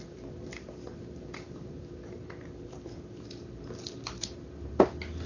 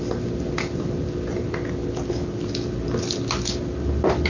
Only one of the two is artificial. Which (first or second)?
first